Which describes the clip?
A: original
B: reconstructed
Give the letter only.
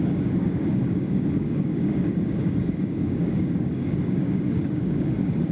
B